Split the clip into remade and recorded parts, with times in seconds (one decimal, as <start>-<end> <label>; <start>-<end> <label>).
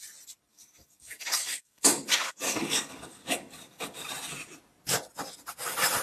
0.0-0.5 recorded; 0.5-4.1 remade; 4.1-6.0 recorded